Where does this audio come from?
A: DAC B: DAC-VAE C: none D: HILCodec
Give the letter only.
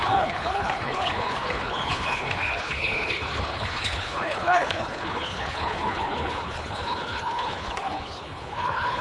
D